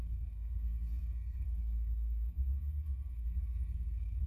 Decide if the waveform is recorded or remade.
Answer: remade